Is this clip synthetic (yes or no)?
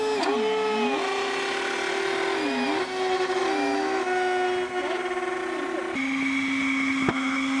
no